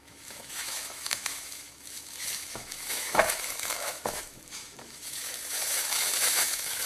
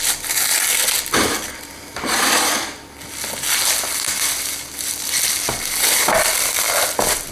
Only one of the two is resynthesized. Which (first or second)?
first